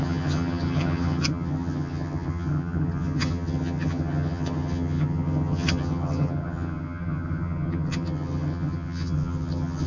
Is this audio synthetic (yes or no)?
yes